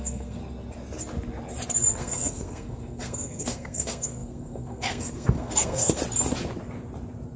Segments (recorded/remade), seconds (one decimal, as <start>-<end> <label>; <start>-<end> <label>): 0.0-0.4 remade; 0.4-2.0 recorded; 2.0-6.0 remade; 6.0-7.4 recorded